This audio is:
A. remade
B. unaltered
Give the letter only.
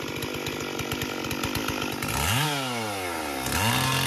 B